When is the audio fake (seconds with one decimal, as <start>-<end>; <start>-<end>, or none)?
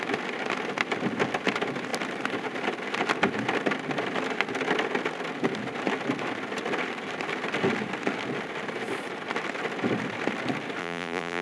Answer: 10.8-11.4